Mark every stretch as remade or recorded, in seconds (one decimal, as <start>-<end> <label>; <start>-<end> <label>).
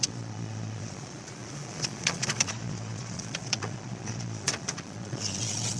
0.0-5.8 remade